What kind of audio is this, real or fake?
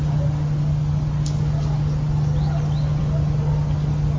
real